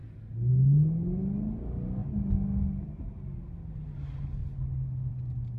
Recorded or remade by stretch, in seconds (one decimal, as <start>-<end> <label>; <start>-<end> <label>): 0.0-5.6 recorded